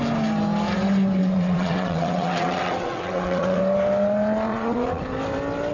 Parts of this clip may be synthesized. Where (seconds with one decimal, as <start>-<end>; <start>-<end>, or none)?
1.2-3.6; 4.5-5.0